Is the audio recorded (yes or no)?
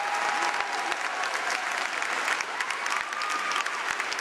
yes